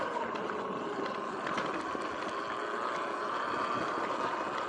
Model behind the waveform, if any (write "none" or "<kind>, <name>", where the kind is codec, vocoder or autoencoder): none